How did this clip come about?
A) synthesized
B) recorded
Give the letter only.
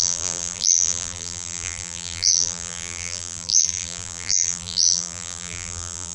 A